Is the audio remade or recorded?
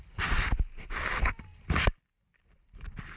recorded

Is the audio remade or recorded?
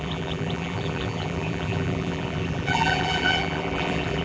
remade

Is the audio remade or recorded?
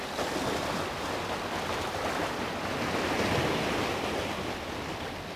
recorded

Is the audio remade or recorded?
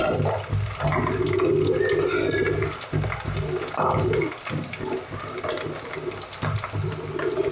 recorded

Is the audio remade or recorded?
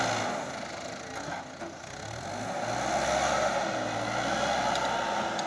recorded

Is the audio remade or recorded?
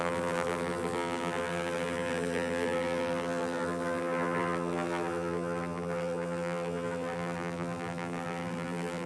remade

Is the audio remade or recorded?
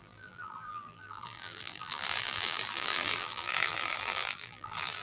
remade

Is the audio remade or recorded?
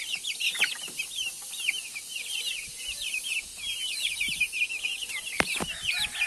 recorded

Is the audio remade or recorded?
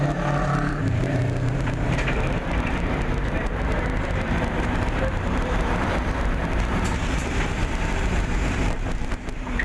remade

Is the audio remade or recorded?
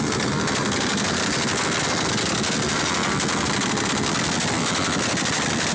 recorded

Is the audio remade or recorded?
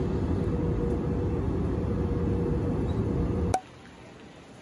recorded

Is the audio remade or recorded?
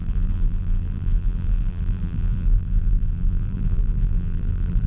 remade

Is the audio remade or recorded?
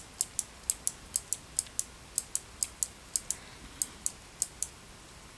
recorded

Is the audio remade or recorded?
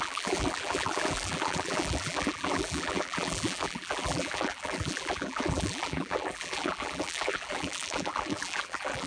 remade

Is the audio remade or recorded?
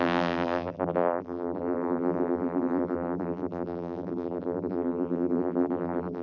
remade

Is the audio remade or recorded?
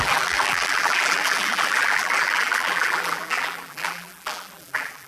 remade